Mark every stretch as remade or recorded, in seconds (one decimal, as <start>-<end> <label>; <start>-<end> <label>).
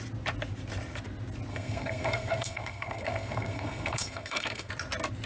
0.0-1.5 recorded; 1.5-4.7 remade; 4.7-5.3 recorded